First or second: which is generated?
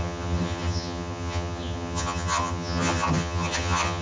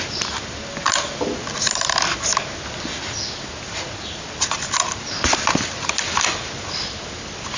first